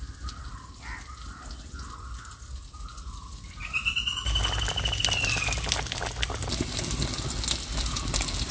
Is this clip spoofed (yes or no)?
no